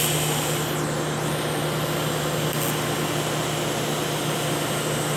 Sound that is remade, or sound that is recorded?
recorded